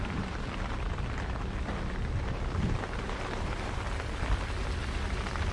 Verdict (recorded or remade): remade